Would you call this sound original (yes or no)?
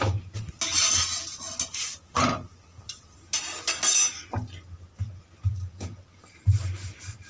yes